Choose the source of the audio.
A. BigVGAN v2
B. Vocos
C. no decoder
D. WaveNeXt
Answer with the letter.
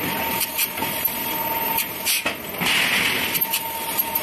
C